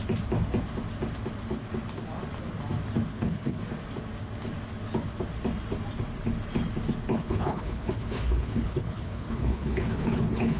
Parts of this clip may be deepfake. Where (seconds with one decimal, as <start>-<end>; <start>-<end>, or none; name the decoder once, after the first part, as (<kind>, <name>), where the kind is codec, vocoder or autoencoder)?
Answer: 3.1-3.6 (codec, HILCodec); 7.1-10.6